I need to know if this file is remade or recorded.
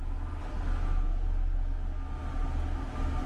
recorded